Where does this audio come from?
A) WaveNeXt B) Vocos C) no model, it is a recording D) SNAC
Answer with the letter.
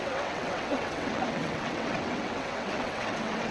A